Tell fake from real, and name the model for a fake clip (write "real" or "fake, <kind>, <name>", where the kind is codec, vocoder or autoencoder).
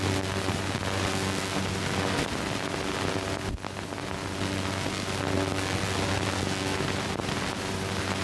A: real